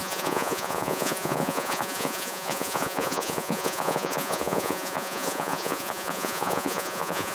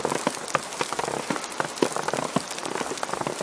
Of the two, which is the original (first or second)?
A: second